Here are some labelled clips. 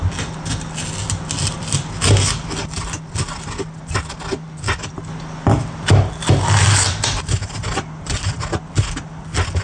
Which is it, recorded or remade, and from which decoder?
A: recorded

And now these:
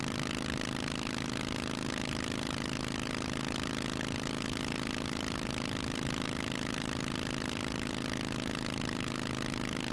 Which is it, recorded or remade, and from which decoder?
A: recorded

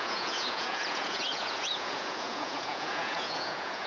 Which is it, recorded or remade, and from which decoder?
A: remade, vocoder, Vocos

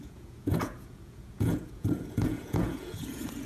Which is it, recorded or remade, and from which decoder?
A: remade, vocoder, Vocos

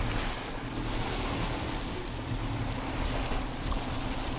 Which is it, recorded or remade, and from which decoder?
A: recorded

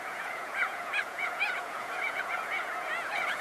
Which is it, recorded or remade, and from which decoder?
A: remade, vocoder, Vocos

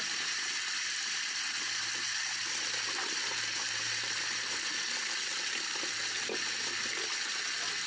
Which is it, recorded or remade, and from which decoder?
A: recorded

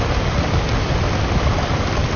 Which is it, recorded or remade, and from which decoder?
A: recorded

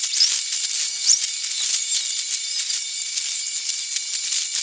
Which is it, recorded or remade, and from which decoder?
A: recorded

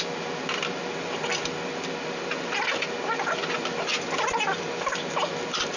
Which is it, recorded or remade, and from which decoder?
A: recorded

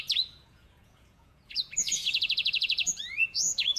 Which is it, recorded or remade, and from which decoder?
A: remade, vocoder, Vocos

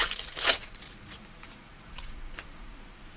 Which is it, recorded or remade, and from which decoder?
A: remade, vocoder, Vocos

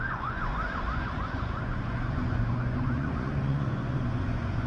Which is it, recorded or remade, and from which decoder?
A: remade, vocoder, Vocos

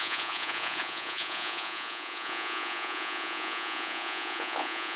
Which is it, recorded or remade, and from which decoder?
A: remade, vocoder, Vocos